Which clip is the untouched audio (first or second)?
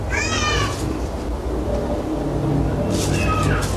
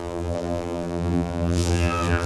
first